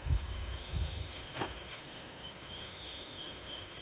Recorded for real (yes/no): no